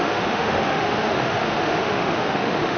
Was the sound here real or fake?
fake